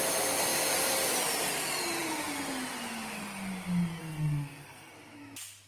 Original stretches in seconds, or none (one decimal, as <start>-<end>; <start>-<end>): 0.0-4.0; 4.9-5.7